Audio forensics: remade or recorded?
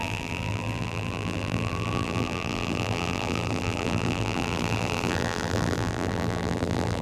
remade